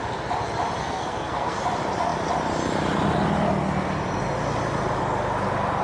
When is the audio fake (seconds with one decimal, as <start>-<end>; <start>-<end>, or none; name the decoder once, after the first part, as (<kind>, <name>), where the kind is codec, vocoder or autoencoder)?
0.8-1.6 (codec, SNAC)